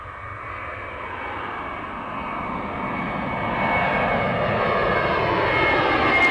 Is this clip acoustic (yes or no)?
yes